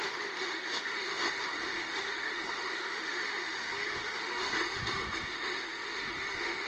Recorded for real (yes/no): no